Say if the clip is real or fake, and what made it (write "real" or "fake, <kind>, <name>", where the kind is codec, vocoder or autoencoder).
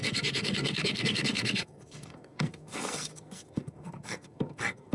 fake, codec, SNAC